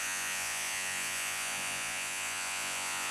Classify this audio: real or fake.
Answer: fake